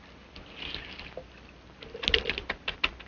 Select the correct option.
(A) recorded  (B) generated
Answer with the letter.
A